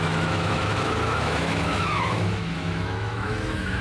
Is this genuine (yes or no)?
no